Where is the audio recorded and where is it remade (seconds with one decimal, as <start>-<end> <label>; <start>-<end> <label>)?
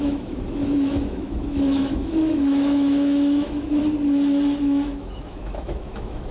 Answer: 0.0-3.8 remade; 3.8-4.6 recorded; 4.6-6.3 remade